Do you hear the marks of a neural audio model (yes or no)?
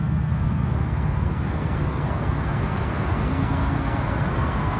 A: yes